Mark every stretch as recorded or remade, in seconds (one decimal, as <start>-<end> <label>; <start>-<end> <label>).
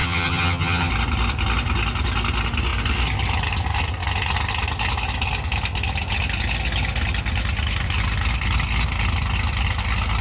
0.0-0.9 remade; 0.9-10.2 recorded